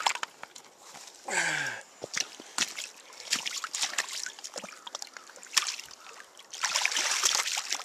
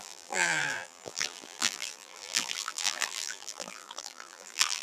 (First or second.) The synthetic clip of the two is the second